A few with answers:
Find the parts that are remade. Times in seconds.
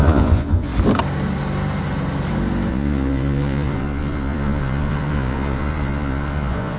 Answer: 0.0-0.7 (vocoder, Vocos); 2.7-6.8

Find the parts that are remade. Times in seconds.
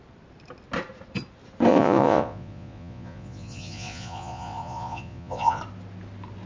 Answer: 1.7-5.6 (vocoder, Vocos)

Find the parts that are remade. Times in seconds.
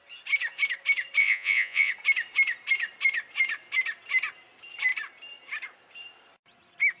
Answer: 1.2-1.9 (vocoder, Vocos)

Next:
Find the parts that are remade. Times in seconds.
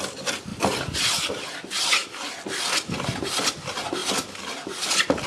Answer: none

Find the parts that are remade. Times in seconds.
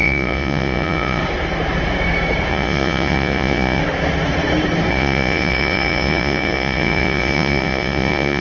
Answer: 0.0-1.2 (vocoder, Vocos); 2.5-3.8; 4.9-8.4